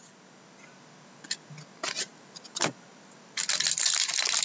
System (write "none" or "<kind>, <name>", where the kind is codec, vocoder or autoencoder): none